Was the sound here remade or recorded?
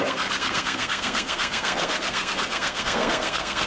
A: remade